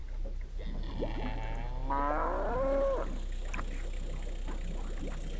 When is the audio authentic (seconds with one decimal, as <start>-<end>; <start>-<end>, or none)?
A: 0.0-5.4